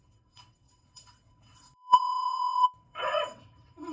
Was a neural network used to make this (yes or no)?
yes